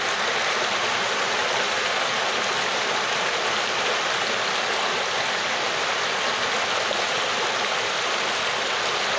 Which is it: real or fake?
real